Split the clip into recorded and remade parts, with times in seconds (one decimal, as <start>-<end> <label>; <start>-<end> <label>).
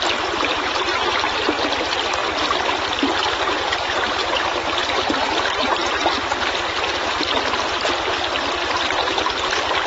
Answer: 0.0-9.9 remade